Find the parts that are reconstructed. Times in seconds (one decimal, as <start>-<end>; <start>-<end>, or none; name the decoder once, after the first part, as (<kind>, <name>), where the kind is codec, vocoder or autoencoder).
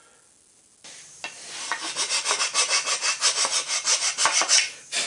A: none